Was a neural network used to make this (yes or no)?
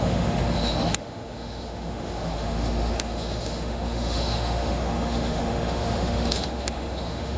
yes